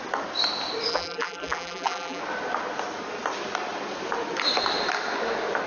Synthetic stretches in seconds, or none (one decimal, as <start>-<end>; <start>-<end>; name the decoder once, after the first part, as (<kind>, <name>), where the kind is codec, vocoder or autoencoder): 0.9-2.2 (vocoder, BigVGAN v2)